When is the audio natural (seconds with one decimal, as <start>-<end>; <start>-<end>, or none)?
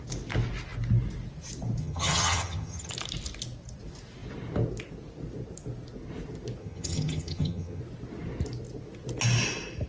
0.0-1.8; 2.9-6.6; 7.8-9.9